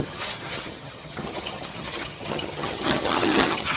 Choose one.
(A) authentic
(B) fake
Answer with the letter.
B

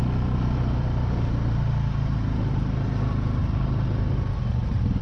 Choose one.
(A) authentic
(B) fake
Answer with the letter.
A